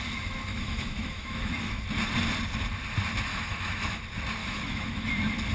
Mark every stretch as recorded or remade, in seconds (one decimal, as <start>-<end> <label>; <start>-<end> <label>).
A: 0.0-0.5 recorded; 0.5-1.8 remade; 1.8-3.3 recorded; 3.3-4.0 remade; 4.0-4.4 recorded; 4.4-5.1 remade; 5.1-5.5 recorded